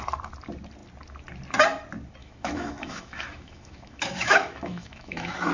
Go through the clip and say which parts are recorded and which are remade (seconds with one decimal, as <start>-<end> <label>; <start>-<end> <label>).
0.0-2.2 recorded; 2.2-5.5 remade